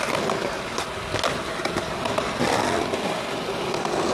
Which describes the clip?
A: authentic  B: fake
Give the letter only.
A